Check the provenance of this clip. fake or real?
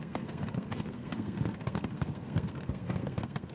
fake